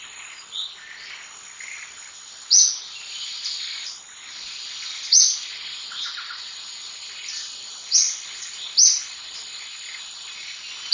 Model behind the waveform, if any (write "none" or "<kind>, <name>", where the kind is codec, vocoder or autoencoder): none